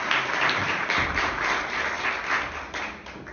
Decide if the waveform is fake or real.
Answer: real